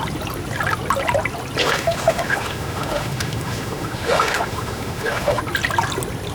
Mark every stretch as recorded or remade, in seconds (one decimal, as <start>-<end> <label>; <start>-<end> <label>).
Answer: 0.0-1.6 recorded; 1.6-5.4 remade; 5.4-6.3 recorded